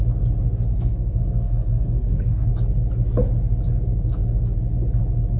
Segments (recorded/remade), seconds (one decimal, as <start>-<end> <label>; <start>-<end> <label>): 0.0-0.7 recorded; 0.7-2.5 remade; 2.5-5.4 recorded